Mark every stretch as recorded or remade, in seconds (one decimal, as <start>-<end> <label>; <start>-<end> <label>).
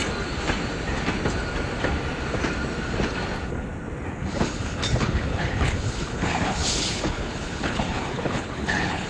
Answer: 0.0-4.1 recorded; 4.1-9.1 remade